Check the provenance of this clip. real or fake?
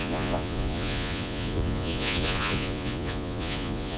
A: fake